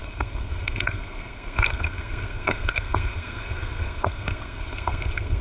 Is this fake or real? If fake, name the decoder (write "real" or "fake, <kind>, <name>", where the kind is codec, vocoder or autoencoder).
fake, codec, SNAC